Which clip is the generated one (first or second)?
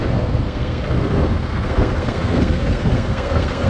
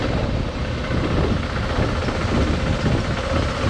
first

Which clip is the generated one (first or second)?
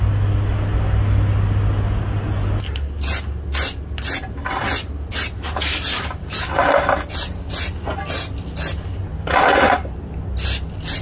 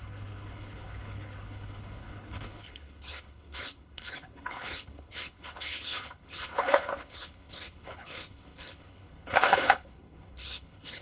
second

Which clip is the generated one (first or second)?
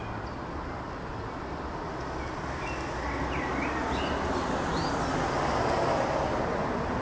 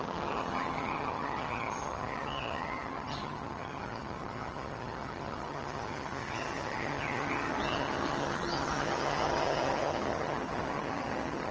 second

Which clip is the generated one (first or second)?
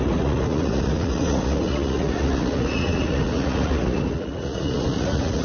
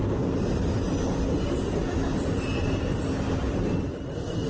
first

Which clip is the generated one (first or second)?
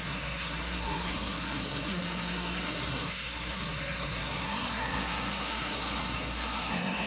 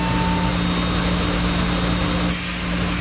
first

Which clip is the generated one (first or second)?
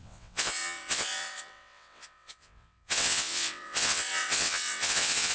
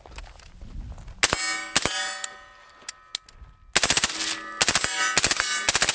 first